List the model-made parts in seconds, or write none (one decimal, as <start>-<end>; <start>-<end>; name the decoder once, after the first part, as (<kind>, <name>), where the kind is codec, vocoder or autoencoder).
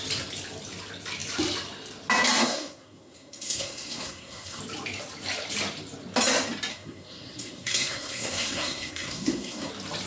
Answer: 2.4-4.6 (codec, SNAC); 6.7-9.7